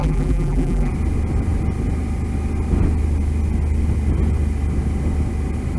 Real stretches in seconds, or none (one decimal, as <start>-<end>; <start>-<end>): 0.9-5.8

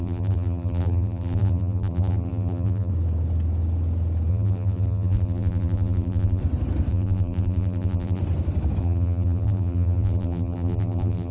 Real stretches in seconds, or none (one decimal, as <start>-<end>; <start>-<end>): 2.9-4.3; 6.4-6.9; 8.2-8.8

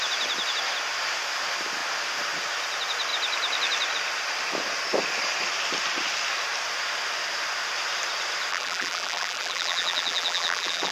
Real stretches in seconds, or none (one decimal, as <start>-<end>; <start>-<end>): 0.0-8.5

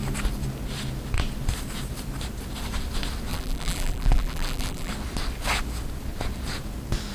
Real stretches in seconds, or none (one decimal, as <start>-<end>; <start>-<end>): 0.0-3.3; 4.9-7.1

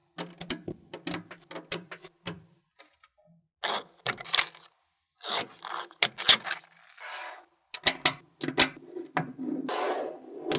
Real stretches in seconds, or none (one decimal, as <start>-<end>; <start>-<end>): 0.0-10.6

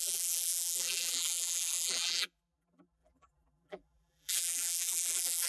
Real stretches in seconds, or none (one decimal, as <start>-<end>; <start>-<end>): none

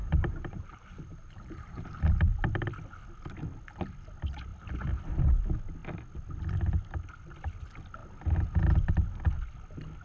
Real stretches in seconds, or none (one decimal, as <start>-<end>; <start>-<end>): 2.0-10.0